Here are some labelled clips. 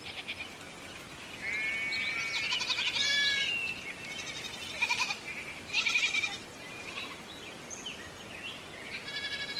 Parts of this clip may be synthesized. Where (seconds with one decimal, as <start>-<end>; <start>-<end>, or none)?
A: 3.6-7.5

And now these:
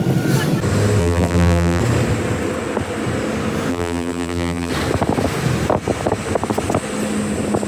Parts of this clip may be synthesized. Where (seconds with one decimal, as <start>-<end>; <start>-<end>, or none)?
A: 1.0-1.8; 3.7-4.7

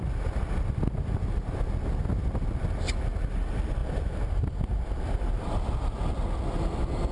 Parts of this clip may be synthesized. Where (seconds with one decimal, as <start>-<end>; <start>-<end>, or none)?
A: 3.8-7.1